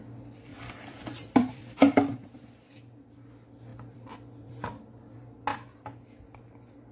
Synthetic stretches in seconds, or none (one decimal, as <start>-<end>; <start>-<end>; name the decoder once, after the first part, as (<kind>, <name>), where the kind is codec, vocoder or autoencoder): 0.5-1.8 (vocoder, BigVGAN v2); 3.7-4.5